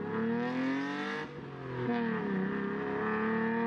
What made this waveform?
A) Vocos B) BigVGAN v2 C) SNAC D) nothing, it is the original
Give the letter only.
D